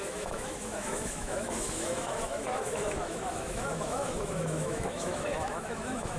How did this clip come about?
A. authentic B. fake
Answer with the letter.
B